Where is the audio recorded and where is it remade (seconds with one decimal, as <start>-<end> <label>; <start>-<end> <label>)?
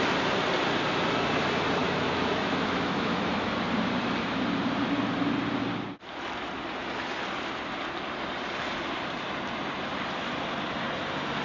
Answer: 0.0-1.8 recorded; 1.8-3.5 remade; 3.5-11.4 recorded